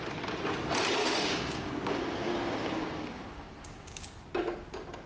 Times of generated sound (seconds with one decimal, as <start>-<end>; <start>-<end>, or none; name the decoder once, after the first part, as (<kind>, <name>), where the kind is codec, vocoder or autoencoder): 1.0-4.1 (codec, DAC)